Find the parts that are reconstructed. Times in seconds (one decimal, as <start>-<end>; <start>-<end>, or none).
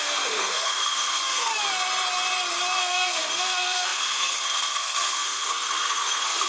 0.0-1.5; 2.8-6.5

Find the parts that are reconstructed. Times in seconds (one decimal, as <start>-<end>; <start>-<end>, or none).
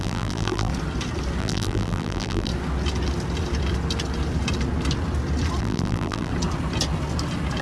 0.0-0.7; 1.4-2.5; 5.6-6.3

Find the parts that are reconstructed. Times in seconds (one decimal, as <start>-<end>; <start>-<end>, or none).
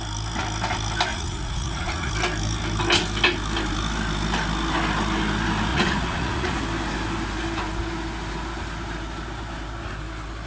1.1-2.1; 5.7-6.6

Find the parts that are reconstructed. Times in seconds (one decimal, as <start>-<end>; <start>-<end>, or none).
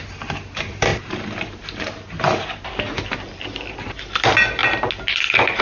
none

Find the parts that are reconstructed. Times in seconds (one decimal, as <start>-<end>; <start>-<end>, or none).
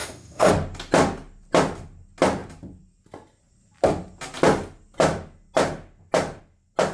0.0-0.5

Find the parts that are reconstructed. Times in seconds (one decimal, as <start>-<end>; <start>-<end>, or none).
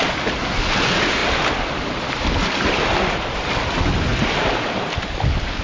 none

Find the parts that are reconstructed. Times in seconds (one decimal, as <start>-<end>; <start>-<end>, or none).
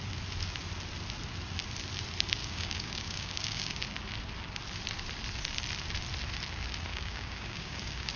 2.4-3.8; 6.9-8.2